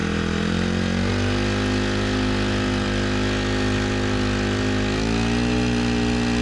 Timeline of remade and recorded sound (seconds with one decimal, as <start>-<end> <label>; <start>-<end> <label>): 0.0-1.1 remade; 1.1-6.4 recorded